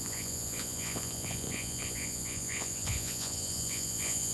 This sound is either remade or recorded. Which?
remade